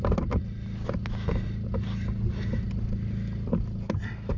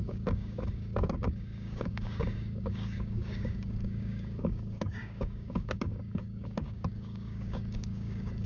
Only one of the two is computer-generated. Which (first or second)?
second